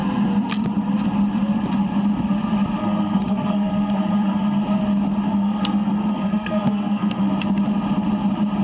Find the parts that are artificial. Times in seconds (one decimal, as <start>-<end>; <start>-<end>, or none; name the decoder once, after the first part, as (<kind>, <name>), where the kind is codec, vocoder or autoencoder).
2.8-4.6 (codec, SNAC); 5.3-7.3